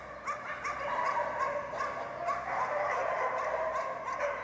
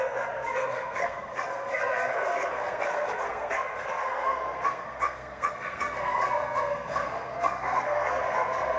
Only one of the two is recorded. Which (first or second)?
first